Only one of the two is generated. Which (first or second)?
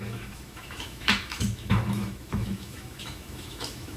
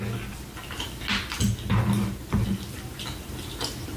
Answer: first